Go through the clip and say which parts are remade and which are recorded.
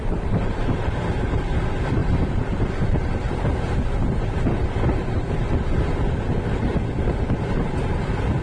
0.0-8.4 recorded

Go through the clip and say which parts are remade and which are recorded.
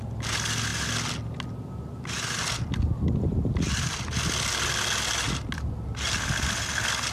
0.0-7.1 recorded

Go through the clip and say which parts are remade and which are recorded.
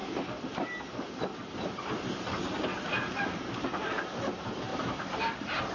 0.0-3.4 recorded; 3.4-5.7 remade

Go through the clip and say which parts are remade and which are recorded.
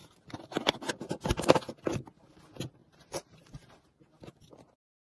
0.0-2.8 recorded; 2.8-3.8 remade; 3.8-5.0 recorded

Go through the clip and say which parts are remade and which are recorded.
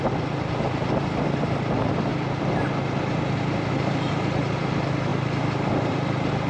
0.0-2.1 remade; 2.1-3.7 recorded; 3.7-6.5 remade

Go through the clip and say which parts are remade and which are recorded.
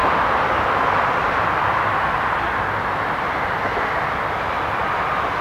0.0-5.4 recorded